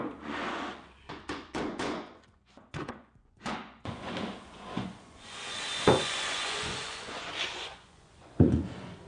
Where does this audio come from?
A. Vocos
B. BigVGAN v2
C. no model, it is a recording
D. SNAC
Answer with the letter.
A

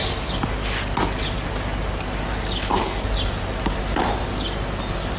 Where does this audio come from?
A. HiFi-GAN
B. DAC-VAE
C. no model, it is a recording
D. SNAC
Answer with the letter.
C